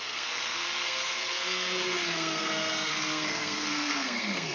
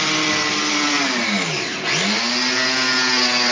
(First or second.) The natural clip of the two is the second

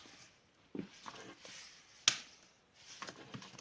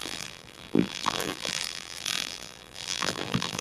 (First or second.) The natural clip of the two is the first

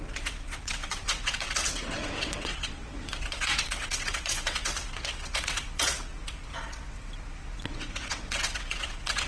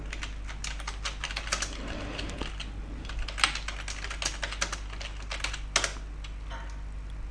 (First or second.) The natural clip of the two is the second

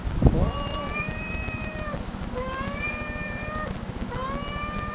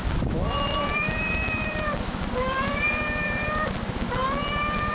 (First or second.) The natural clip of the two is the first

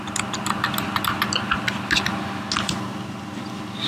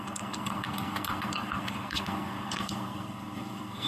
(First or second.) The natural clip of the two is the first